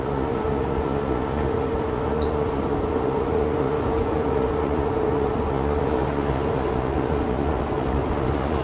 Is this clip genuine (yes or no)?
no